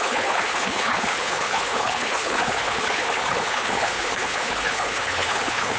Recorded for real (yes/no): no